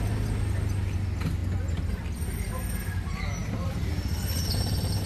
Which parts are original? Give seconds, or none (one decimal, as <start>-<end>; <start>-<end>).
0.0-5.1